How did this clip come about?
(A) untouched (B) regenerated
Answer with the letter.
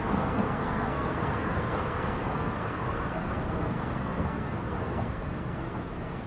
B